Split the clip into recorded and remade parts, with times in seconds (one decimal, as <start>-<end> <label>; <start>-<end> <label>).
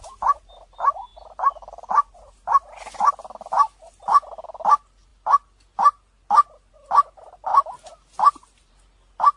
0.0-1.1 recorded; 1.1-3.1 remade; 3.1-9.4 recorded